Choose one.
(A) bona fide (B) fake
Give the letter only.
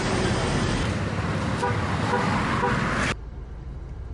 A